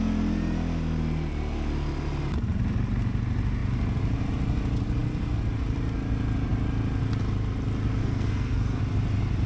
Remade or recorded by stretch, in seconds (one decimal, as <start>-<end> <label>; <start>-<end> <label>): 0.0-8.0 recorded; 8.0-8.8 remade; 8.8-9.5 recorded

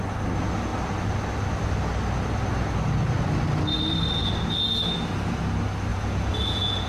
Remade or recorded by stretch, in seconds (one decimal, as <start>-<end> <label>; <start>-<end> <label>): 0.0-5.9 recorded; 5.9-6.9 remade

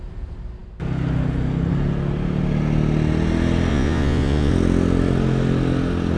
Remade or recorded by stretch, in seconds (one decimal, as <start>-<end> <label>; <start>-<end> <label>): 0.0-3.7 recorded; 3.7-4.5 remade; 4.5-6.2 recorded

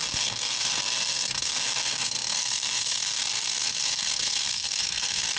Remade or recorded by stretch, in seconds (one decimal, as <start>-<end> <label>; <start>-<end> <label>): 0.0-5.4 remade

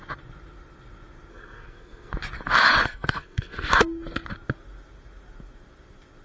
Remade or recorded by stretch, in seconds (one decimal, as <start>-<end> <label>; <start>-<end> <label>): 0.0-1.3 recorded; 1.3-2.1 remade; 2.1-2.8 recorded; 2.8-3.7 remade; 3.7-6.2 recorded

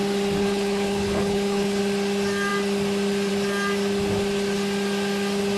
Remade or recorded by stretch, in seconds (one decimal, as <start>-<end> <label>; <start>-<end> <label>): 0.0-0.4 recorded; 0.4-1.8 remade; 1.8-5.6 recorded